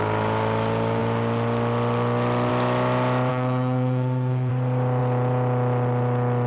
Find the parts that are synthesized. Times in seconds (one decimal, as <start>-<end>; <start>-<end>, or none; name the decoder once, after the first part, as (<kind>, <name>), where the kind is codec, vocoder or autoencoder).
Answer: 3.3-4.5 (codec, SNAC)